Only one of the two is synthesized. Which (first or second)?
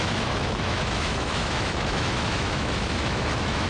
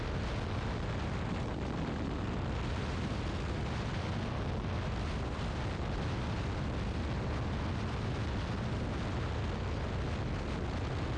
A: first